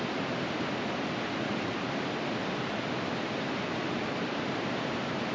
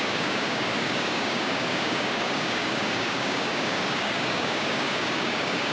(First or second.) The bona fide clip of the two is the first